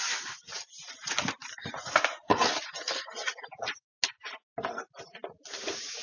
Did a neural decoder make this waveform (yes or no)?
no